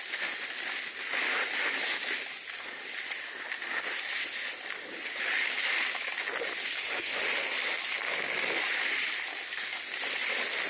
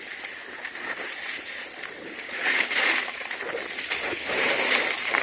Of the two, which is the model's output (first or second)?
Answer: second